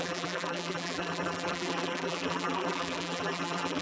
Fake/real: fake